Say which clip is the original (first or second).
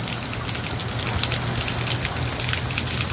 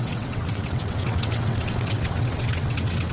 first